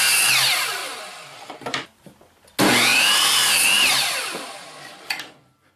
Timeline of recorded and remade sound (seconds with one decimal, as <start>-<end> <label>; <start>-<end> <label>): 0.0-0.8 recorded; 0.8-2.2 remade; 2.2-2.9 recorded; 2.9-5.3 remade; 5.3-5.8 recorded